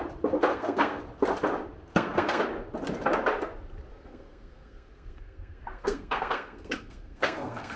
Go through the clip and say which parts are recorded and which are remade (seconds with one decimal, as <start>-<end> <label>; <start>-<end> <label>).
0.0-0.5 recorded; 0.5-1.0 remade; 1.0-1.9 recorded; 1.9-2.4 remade; 2.4-3.9 recorded; 3.9-7.8 remade